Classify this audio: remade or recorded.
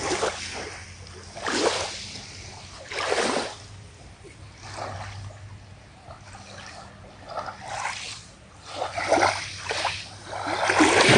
recorded